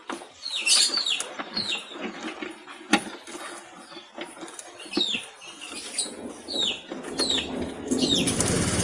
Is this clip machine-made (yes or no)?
no